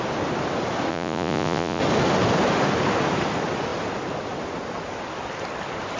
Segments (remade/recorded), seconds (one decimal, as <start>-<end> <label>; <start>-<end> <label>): 0.0-0.9 recorded; 0.9-1.8 remade; 1.8-6.0 recorded